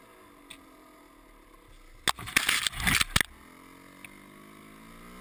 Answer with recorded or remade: recorded